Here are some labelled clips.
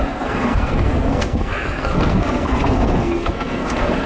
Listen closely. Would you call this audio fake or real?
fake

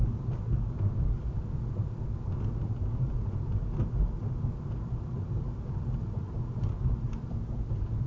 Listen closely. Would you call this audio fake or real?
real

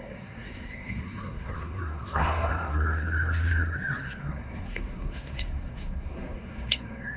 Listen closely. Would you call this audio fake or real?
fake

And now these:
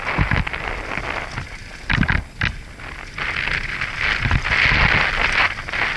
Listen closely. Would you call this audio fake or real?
real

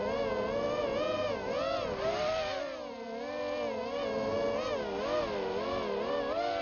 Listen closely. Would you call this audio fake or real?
real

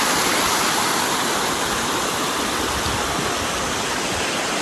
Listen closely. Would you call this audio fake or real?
real